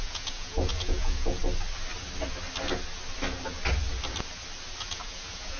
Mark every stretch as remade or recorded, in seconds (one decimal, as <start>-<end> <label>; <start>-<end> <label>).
0.0-1.4 remade; 1.4-4.8 recorded; 4.8-5.6 remade